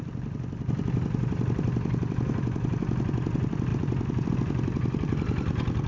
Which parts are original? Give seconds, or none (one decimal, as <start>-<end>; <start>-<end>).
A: 0.0-5.9